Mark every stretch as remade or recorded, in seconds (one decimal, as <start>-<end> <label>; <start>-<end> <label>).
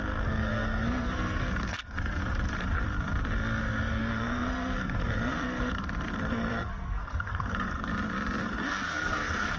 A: 0.0-2.2 remade; 2.2-3.6 recorded; 3.6-7.9 remade; 7.9-8.4 recorded; 8.4-9.6 remade